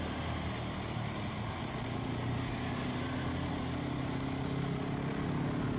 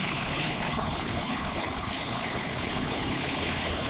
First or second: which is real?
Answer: first